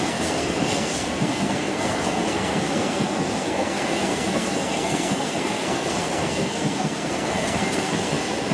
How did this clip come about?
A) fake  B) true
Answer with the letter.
A